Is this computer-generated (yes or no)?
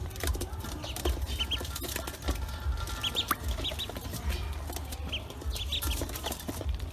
no